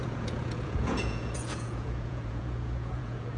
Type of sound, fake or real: fake